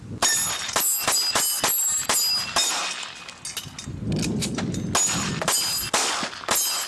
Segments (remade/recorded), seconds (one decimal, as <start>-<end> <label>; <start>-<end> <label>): 0.0-6.9 recorded